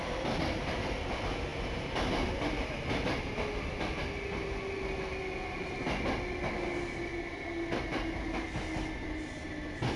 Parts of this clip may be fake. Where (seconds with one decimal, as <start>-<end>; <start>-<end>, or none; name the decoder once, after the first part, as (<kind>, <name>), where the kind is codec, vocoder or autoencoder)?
none

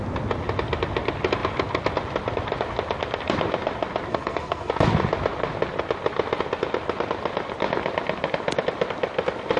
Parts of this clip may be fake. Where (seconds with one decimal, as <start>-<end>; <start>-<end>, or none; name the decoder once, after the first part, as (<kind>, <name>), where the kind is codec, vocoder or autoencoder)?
4.1-4.7 (codec, SNAC)

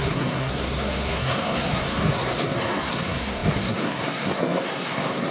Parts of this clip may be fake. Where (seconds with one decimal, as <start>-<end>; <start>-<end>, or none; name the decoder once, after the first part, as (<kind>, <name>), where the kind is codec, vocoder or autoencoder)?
0.0-5.3 (codec, SNAC)

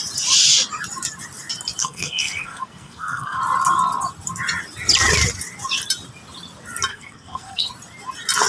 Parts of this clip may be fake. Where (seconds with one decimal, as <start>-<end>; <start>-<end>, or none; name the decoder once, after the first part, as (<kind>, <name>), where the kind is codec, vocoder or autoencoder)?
1.8-3.4 (codec, SNAC); 6.9-7.7

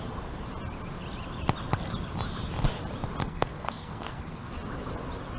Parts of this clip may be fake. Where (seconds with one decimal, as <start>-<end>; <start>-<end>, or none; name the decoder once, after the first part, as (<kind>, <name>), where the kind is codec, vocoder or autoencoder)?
3.2-4.5 (codec, SNAC)